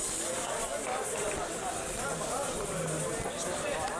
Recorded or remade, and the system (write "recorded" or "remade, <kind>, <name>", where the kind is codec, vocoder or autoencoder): recorded